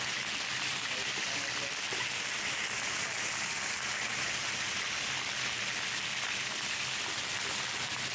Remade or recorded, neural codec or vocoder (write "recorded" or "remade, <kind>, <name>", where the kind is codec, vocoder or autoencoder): recorded